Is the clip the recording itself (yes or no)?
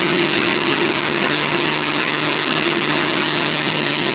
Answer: no